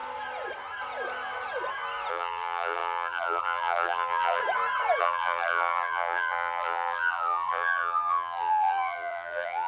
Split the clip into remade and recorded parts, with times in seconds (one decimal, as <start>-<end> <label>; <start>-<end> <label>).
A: 0.0-2.1 recorded; 2.1-4.4 remade; 4.4-5.0 recorded; 5.0-9.7 remade